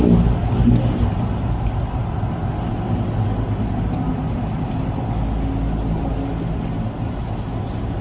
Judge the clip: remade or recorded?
recorded